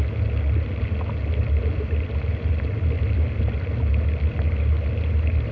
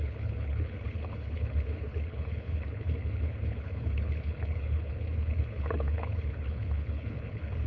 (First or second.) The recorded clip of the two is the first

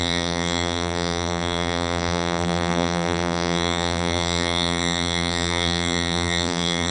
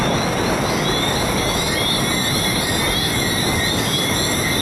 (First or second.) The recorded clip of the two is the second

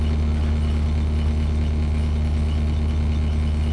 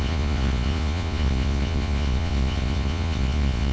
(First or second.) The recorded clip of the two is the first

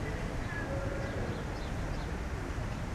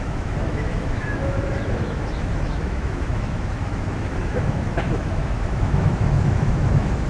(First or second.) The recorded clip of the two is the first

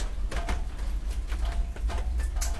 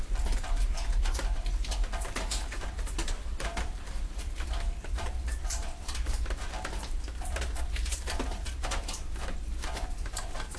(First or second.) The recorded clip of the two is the first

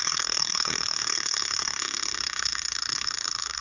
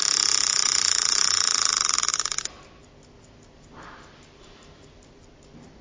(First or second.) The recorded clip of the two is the second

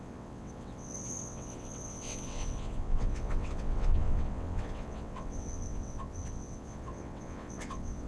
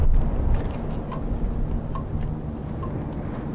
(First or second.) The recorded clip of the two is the second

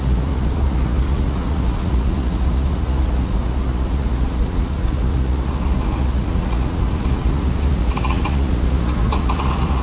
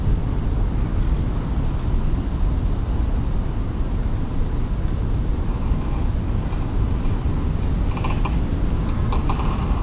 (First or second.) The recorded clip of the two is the second